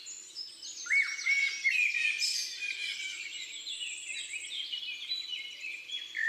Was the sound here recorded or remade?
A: recorded